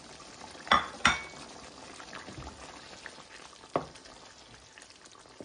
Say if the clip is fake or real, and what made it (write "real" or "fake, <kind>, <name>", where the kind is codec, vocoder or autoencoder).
real